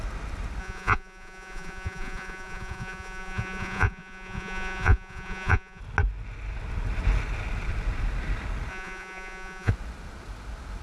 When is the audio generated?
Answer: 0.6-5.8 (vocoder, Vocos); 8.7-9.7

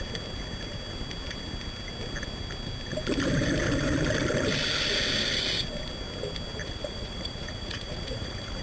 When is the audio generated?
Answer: 6.6-8.6 (vocoder, Vocos)

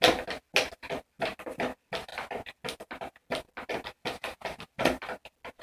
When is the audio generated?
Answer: none

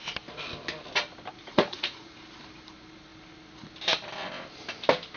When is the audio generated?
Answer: 1.4-2.1 (vocoder, Vocos)